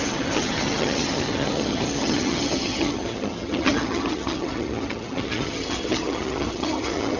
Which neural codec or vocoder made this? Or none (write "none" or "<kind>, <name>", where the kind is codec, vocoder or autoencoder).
vocoder, HiFi-GAN